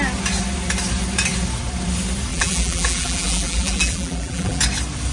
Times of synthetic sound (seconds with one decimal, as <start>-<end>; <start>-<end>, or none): 2.3-4.6